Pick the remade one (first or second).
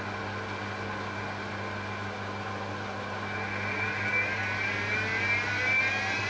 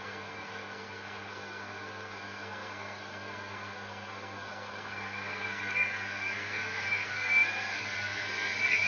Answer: second